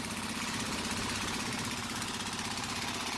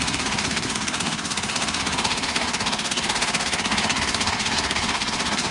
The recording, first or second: first